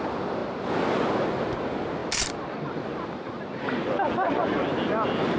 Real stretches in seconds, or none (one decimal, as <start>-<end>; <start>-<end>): 0.0-5.4